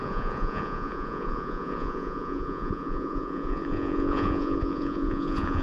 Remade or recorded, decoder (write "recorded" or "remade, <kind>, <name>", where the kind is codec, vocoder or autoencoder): remade, vocoder, Vocos